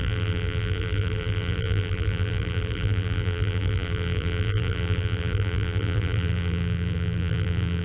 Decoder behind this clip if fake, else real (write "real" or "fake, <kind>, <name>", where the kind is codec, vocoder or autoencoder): fake, vocoder, BigVGAN v2